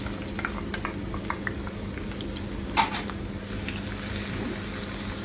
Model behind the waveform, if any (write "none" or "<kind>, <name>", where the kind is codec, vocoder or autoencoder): none